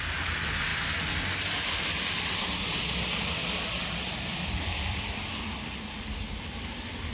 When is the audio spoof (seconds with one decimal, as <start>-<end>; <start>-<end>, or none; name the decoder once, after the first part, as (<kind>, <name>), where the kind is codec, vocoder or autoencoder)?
none